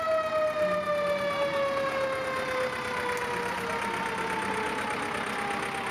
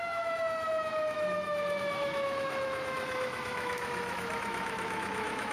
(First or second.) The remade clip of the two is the second